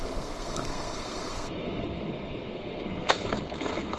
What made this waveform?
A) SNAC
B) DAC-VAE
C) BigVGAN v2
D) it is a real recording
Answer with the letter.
A